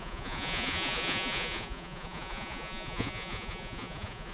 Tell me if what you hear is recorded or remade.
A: remade